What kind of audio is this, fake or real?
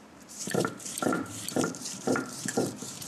fake